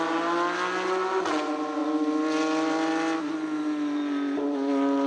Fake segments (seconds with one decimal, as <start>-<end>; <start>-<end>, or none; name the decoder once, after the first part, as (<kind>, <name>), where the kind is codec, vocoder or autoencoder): 1.8-5.1 (vocoder, BigVGAN v2)